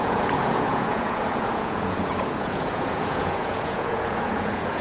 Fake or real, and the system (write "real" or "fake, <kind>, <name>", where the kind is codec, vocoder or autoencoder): fake, vocoder, Vocos